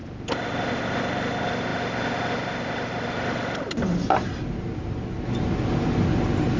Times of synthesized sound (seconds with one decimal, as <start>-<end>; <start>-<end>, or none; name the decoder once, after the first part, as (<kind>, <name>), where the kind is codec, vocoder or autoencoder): none